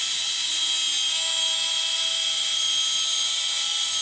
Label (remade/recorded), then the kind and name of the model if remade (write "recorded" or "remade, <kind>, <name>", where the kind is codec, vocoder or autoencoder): recorded